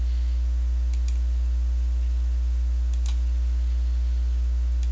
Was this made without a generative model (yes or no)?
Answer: yes